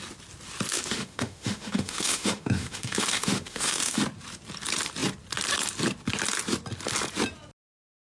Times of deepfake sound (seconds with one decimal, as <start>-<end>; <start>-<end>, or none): 0.7-4.0